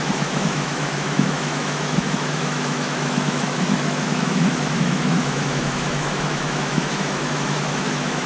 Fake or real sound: fake